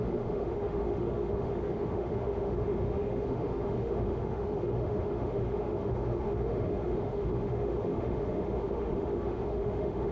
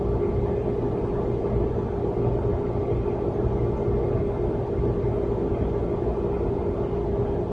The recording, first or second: second